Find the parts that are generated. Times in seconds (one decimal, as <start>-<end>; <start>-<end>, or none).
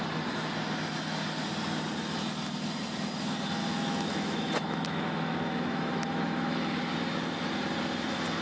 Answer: 3.6-6.8